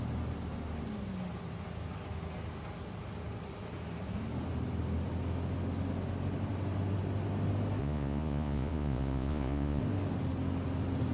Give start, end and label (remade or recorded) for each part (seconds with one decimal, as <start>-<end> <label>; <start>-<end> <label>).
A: 0.0-7.8 recorded; 7.8-9.8 remade; 9.8-11.1 recorded